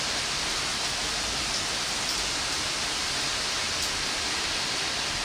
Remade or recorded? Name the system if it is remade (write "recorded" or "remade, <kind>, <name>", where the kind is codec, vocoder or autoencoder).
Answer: recorded